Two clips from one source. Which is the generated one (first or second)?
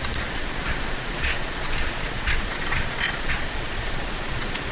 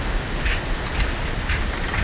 first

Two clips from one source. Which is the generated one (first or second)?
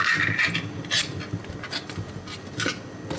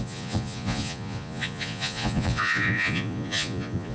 second